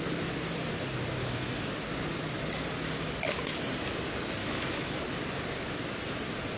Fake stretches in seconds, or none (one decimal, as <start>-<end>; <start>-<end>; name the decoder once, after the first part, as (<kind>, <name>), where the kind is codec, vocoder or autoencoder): 1.2-1.7 (autoencoder, DAC-VAE); 4.4-5.0